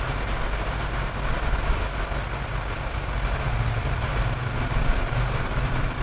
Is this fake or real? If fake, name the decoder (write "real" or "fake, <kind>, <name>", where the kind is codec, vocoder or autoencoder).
real